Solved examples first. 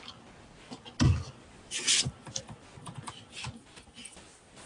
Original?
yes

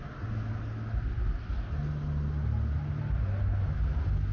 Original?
yes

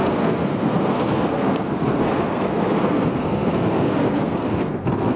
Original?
no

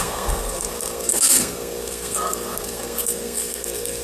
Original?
no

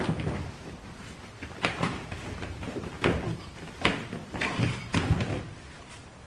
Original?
yes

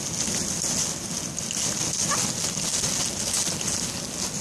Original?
yes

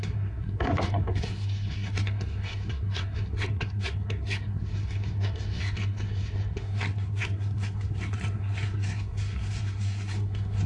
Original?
no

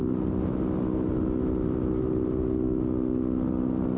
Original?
yes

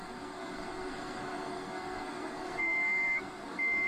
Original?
no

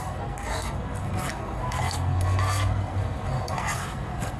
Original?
no